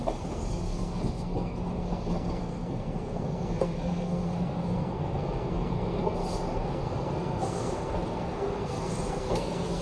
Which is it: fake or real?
fake